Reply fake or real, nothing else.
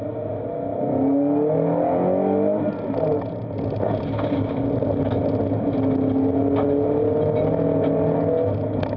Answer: real